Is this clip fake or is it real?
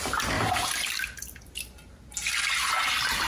real